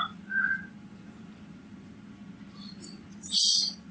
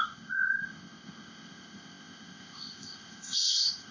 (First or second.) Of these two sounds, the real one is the first